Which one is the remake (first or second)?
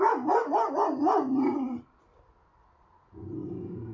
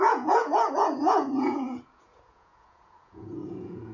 second